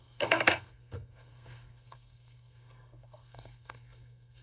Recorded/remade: remade